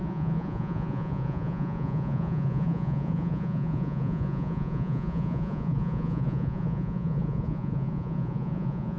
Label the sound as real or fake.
fake